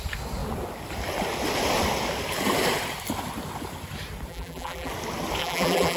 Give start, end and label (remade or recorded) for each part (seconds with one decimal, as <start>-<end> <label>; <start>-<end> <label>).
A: 0.0-4.3 recorded; 4.3-4.9 remade; 4.9-5.4 recorded; 5.4-6.0 remade